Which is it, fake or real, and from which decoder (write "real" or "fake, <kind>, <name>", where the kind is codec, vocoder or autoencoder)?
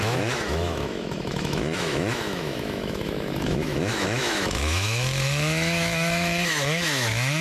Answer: fake, autoencoder, DAC-VAE